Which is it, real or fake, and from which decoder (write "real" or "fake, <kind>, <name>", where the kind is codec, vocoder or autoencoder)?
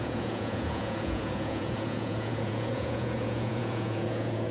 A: fake, vocoder, Vocos